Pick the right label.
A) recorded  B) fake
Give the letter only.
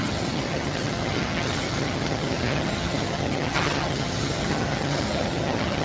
B